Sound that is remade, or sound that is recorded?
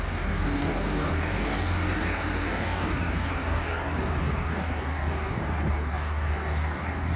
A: remade